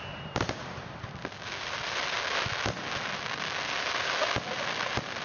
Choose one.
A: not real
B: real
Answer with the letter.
B